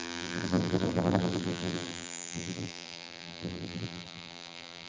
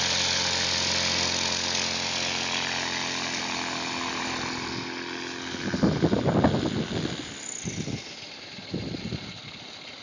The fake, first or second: first